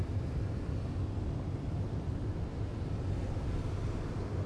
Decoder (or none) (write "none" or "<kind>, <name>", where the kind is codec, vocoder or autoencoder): none